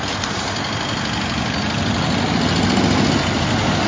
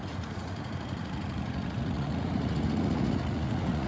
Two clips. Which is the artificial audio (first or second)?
second